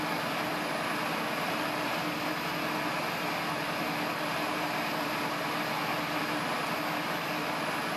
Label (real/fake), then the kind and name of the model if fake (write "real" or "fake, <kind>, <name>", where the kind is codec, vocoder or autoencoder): real